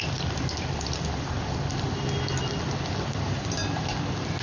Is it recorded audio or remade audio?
recorded